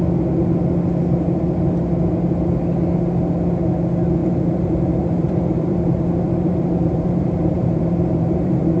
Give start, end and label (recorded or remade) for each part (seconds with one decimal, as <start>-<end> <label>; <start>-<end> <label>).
0.0-4.2 recorded; 4.2-8.8 remade